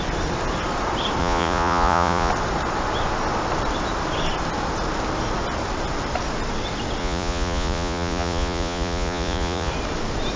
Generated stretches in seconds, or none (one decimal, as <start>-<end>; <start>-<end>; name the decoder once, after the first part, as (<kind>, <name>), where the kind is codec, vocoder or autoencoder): 1.2-2.3 (vocoder, Vocos); 7.0-9.7